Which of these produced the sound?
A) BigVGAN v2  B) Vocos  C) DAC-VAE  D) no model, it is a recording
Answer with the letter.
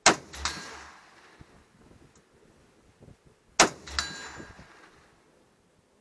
D